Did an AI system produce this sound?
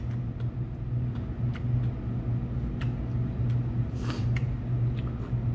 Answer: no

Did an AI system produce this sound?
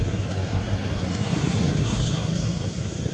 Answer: yes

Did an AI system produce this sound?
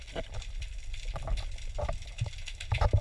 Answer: no